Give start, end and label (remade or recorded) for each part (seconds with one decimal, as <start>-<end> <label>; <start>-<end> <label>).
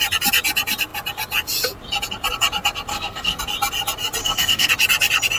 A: 0.0-2.9 recorded; 2.9-3.4 remade; 3.4-4.2 recorded; 4.2-4.7 remade; 4.7-5.4 recorded